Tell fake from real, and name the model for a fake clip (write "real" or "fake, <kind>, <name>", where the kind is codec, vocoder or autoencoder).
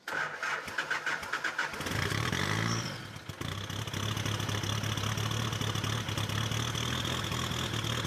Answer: real